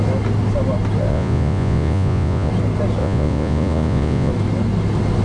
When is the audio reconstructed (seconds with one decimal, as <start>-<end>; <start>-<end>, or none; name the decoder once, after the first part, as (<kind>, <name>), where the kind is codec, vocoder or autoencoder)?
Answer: 1.1-2.5 (vocoder, Vocos); 3.0-4.3